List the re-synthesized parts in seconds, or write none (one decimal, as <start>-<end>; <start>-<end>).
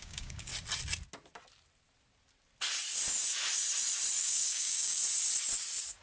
0.0-0.5; 4.1-5.0